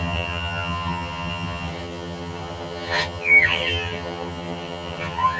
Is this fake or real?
fake